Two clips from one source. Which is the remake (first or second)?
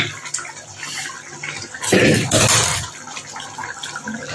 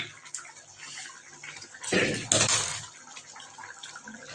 first